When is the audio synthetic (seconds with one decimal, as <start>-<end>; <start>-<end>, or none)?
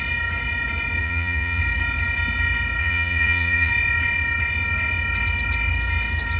1.0-1.6; 2.8-3.7